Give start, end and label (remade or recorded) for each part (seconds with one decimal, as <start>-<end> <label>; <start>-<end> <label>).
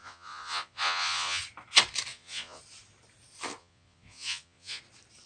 0.0-1.4 remade; 1.4-2.1 recorded; 2.1-2.6 remade; 2.6-3.6 recorded; 3.6-4.8 remade; 4.8-5.3 recorded